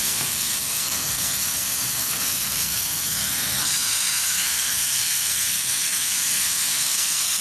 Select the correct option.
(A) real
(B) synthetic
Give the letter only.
B